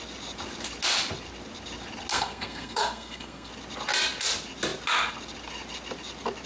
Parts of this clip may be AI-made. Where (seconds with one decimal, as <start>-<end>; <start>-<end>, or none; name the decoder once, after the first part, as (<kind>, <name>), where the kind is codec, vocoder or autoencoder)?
2.1-3.5 (codec, SNAC)